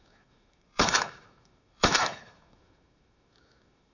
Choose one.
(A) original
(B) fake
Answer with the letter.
B